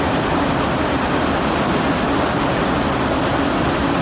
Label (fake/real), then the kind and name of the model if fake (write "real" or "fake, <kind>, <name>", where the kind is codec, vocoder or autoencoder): real